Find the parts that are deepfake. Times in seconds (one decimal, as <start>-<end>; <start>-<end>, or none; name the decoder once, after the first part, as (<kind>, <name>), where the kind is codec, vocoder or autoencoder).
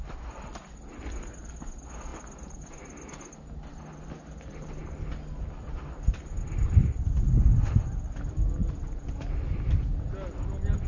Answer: none